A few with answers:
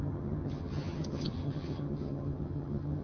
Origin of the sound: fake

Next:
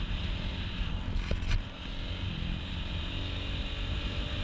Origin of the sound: real